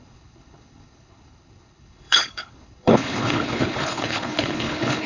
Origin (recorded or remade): remade